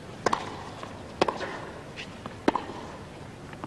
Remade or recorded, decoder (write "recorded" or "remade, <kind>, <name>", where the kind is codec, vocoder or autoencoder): recorded